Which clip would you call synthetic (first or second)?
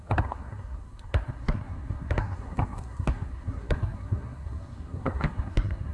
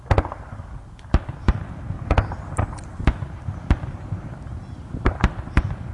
first